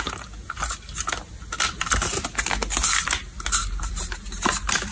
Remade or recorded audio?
recorded